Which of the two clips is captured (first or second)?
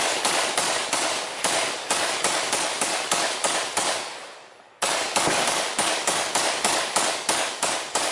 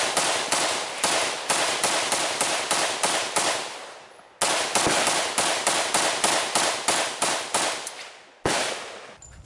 second